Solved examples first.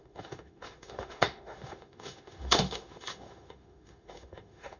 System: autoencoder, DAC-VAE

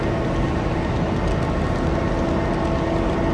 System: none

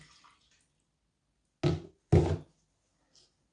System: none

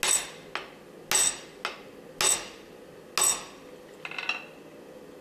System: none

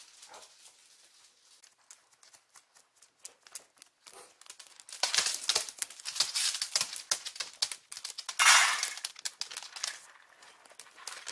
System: none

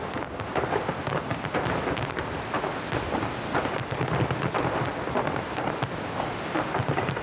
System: none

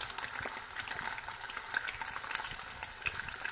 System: none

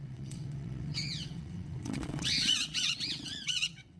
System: vocoder, WaveNeXt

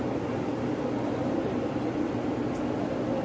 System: none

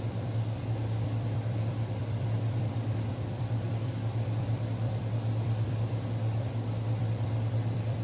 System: vocoder, BigVGAN v2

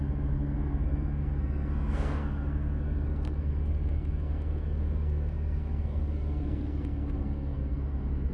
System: codec, SNAC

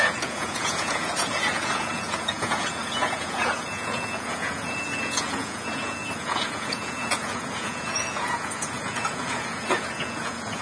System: vocoder, Vocos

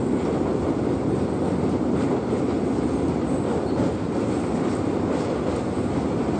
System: none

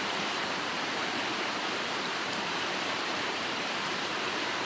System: vocoder, BigVGAN v2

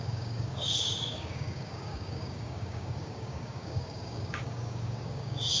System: codec, DAC